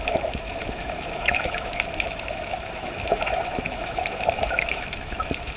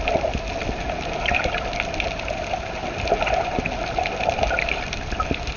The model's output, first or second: first